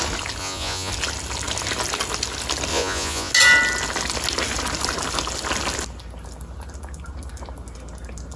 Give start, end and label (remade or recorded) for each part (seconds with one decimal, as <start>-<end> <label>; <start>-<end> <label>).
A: 0.0-0.4 recorded; 0.4-0.9 remade; 0.9-2.7 recorded; 2.7-3.3 remade; 3.3-8.4 recorded